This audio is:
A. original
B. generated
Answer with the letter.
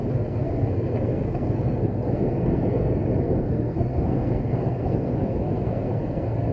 B